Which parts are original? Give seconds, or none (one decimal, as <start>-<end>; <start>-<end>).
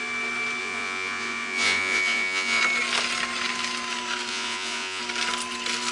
0.0-0.6; 2.6-4.3; 5.0-5.9